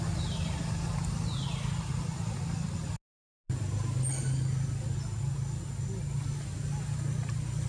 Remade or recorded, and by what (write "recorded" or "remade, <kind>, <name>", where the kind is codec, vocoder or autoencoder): recorded